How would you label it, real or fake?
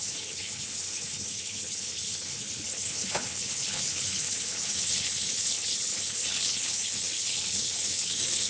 fake